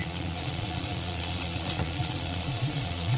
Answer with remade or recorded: remade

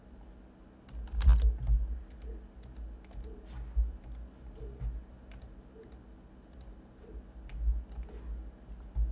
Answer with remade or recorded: recorded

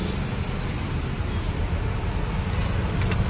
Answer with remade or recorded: recorded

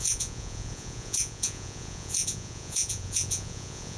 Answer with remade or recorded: remade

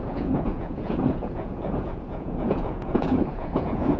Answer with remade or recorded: remade